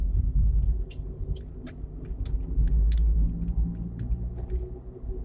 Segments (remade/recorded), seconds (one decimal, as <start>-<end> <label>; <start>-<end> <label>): 0.0-5.2 recorded